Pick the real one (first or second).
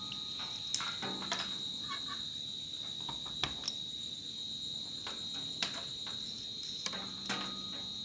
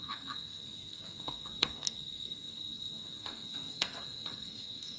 first